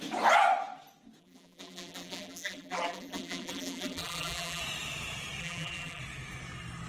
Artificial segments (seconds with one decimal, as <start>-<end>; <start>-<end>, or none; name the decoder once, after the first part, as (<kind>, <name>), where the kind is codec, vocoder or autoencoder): 1.2-4.6 (vocoder, BigVGAN v2); 5.4-6.0